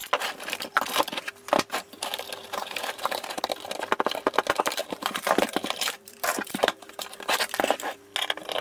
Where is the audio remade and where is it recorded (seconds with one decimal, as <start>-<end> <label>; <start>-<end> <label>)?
0.0-2.4 recorded; 2.4-3.4 remade; 3.4-4.8 recorded; 4.8-6.8 remade; 6.8-8.6 recorded